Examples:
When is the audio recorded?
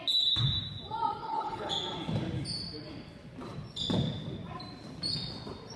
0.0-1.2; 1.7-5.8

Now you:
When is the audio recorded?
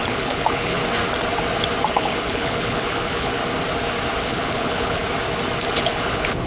0.8-1.9; 3.4-4.2; 5.0-5.7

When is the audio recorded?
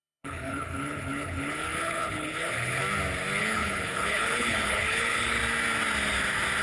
2.8-3.4; 5.4-6.6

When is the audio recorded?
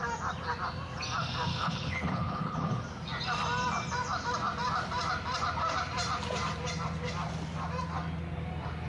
0.0-1.5; 2.8-8.9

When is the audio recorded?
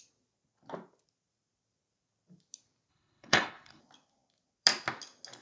0.0-2.9; 3.8-5.4